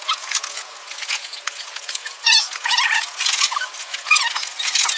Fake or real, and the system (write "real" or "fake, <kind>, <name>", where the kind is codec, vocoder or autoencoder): fake, vocoder, Vocos